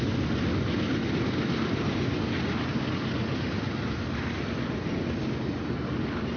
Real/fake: real